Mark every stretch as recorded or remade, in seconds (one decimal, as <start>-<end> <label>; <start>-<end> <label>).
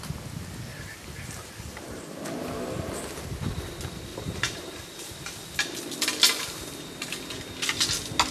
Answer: 0.0-0.7 recorded; 0.7-2.2 remade; 2.2-4.1 recorded; 4.1-5.1 remade; 5.1-8.3 recorded